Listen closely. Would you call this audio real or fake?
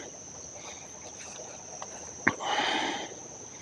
real